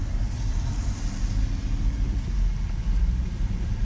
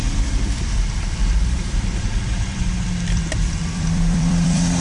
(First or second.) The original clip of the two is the first